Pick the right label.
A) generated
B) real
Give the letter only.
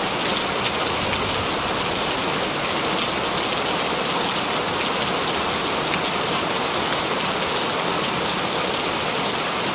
B